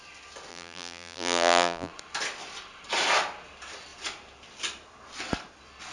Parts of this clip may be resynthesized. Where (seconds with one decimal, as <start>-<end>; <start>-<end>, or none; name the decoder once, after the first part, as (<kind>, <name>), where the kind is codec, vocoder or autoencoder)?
0.5-1.9 (vocoder, BigVGAN v2)

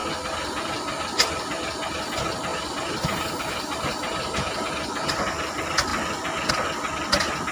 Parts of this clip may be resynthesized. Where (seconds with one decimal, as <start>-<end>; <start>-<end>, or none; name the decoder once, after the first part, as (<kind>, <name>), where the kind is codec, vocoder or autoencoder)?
2.5-4.7 (vocoder, BigVGAN v2)

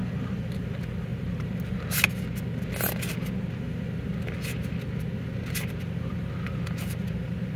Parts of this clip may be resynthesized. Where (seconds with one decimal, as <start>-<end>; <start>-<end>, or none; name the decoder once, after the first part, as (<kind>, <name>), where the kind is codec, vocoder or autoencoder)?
1.1-1.8 (vocoder, BigVGAN v2)

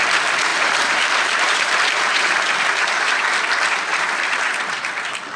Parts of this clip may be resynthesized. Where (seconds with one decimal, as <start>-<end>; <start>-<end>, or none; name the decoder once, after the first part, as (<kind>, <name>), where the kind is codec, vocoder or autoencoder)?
0.5-3.3 (vocoder, BigVGAN v2); 3.9-4.9

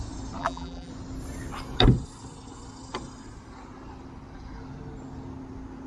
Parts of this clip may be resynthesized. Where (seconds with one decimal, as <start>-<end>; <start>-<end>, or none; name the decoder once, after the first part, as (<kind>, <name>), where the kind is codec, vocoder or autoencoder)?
0.4-0.9 (vocoder, BigVGAN v2)

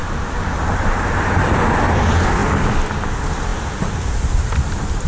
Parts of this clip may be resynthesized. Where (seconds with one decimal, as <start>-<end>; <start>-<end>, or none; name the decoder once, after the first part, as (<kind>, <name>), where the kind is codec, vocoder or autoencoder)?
0.0-0.9 (vocoder, BigVGAN v2)